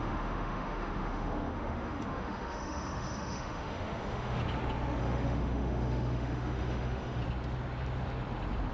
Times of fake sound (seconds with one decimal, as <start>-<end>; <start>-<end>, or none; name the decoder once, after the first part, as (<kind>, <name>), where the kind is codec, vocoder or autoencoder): 0.0-4.4 (autoencoder, DAC-VAE); 5.0-7.2